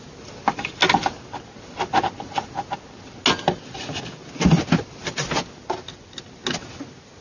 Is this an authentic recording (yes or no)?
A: yes